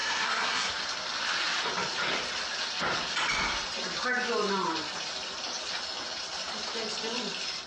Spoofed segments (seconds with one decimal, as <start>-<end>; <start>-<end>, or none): 0.0-0.7